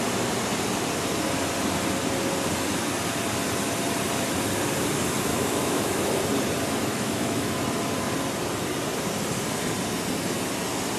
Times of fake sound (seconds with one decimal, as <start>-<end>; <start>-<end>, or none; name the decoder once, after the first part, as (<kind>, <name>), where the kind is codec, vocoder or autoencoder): 5.3-6.1 (autoencoder, DAC-VAE); 6.9-7.5